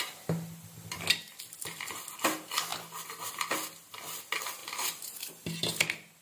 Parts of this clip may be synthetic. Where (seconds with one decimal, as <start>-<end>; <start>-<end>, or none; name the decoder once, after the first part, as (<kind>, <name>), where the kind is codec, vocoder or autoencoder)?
4.6-5.3 (vocoder, BigVGAN v2)